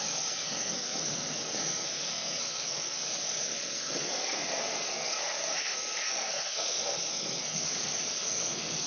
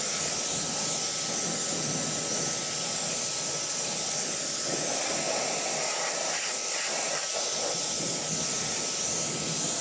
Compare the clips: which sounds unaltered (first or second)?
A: second